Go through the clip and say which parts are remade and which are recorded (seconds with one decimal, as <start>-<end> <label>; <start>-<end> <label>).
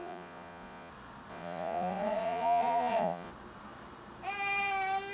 0.0-0.9 remade; 0.9-1.3 recorded; 1.3-3.3 remade; 3.3-5.1 recorded